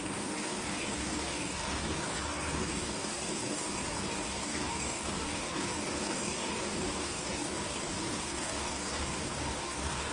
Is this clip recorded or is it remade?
remade